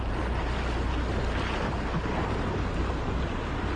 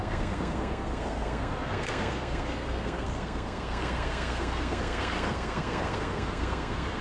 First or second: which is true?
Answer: first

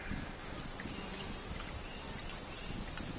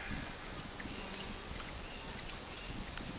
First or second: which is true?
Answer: first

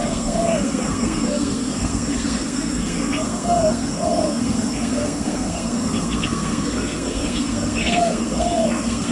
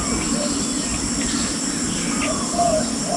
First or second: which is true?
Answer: second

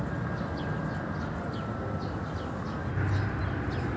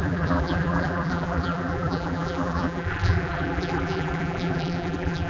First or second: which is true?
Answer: first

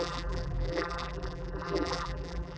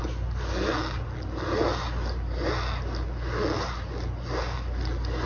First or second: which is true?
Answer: second